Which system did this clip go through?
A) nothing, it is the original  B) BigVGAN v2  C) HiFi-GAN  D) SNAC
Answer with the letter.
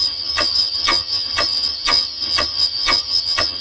C